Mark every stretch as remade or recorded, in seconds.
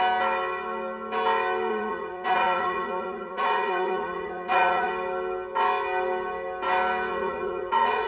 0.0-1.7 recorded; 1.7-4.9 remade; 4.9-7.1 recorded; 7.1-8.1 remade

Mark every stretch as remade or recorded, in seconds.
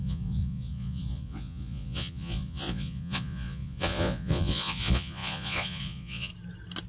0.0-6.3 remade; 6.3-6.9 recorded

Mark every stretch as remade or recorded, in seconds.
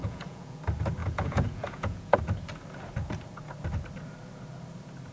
0.0-0.6 remade; 0.6-1.0 recorded; 1.0-2.2 remade; 2.2-5.1 recorded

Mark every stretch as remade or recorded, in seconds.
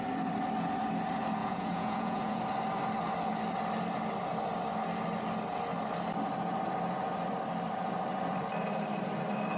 0.0-1.4 recorded; 1.4-2.4 remade; 2.4-9.6 recorded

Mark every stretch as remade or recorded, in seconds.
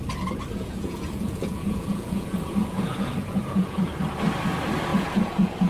0.0-0.5 recorded; 0.5-3.9 remade; 3.9-4.9 recorded; 4.9-5.7 remade